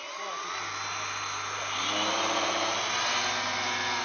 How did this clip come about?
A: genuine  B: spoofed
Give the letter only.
A